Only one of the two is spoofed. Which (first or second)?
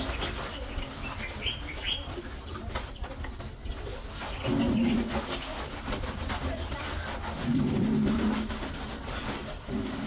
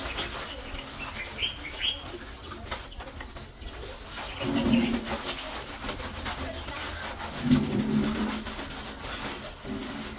first